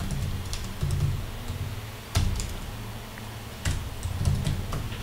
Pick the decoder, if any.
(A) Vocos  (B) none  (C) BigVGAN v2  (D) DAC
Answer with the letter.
B